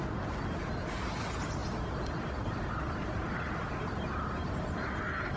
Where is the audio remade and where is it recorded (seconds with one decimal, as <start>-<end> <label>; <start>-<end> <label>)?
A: 0.0-1.6 recorded; 1.6-4.8 remade; 4.8-5.4 recorded